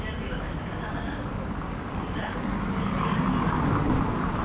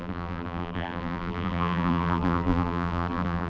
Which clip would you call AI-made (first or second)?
second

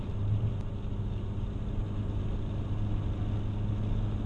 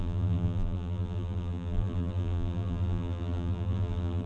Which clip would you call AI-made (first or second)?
second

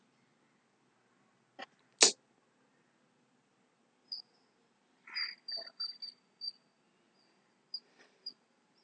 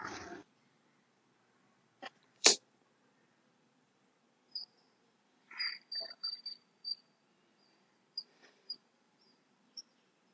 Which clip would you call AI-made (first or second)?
second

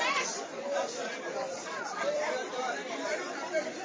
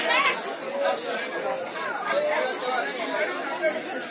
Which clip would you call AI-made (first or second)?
first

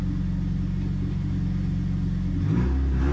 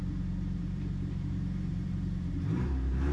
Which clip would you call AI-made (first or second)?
second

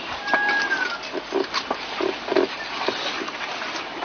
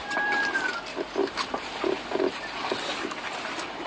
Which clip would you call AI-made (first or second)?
second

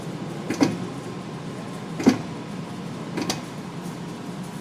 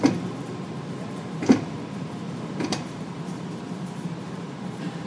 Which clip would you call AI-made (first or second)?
second